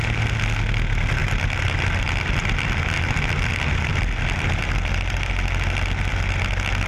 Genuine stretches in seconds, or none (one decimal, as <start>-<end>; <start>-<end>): 0.0-6.9